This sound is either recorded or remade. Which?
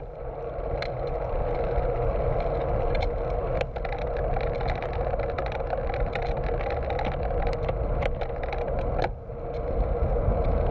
recorded